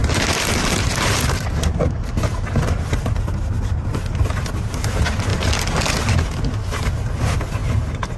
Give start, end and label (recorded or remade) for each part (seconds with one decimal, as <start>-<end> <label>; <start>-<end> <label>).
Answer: 0.0-8.2 recorded

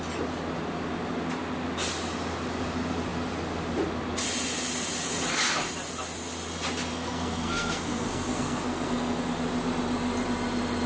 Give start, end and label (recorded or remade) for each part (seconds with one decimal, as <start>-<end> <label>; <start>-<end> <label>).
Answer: 0.0-6.9 recorded; 6.9-9.2 remade; 9.2-10.9 recorded

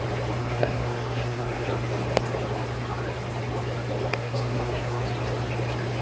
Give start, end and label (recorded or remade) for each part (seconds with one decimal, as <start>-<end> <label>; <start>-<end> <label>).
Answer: 0.0-0.4 recorded; 0.4-1.7 remade; 1.7-4.1 recorded; 4.1-5.0 remade; 5.0-6.0 recorded